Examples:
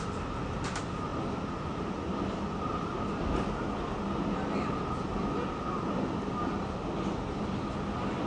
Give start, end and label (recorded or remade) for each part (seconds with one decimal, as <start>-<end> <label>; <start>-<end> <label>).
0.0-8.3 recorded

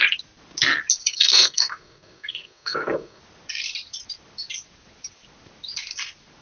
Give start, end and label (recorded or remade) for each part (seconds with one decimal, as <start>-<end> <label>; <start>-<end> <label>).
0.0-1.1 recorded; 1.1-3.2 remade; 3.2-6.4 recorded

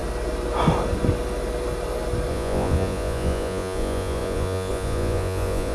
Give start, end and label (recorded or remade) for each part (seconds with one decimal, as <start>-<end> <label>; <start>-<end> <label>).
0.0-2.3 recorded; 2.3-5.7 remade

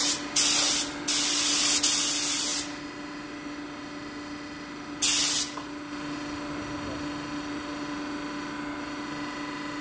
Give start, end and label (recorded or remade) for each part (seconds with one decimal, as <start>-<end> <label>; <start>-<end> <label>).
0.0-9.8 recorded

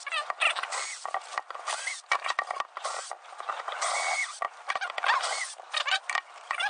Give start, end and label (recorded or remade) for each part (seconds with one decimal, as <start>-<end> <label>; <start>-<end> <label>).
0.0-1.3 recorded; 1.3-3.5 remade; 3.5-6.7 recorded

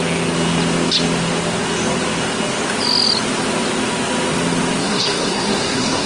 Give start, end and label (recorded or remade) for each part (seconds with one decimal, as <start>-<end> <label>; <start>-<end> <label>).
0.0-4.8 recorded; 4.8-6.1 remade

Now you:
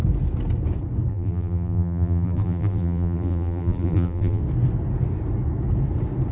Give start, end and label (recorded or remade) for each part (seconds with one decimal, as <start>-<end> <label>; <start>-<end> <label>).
0.0-1.1 recorded; 1.1-4.4 remade; 4.4-6.3 recorded